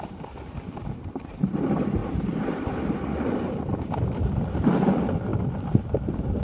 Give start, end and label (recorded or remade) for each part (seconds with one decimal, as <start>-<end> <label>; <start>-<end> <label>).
0.0-6.4 recorded